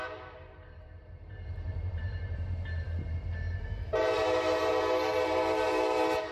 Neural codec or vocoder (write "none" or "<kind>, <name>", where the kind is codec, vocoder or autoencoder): vocoder, BigVGAN v2